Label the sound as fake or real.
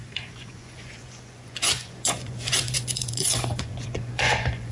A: fake